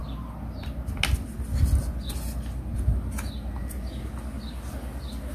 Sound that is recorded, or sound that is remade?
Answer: recorded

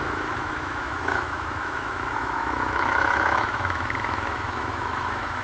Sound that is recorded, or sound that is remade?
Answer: remade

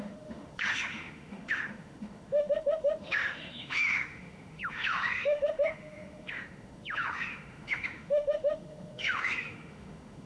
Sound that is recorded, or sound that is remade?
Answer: remade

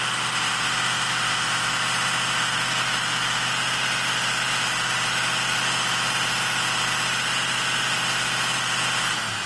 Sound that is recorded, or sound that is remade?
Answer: recorded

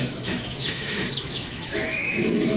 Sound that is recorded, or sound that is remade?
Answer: remade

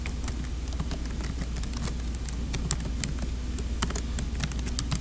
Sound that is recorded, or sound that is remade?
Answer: recorded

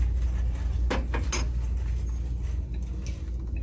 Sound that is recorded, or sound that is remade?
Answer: recorded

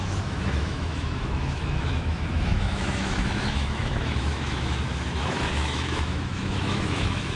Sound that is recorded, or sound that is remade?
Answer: remade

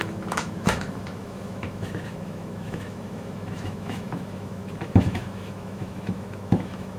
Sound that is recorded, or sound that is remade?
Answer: remade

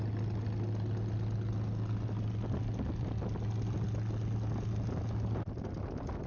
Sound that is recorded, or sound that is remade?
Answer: recorded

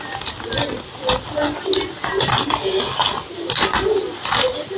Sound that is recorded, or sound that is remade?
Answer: recorded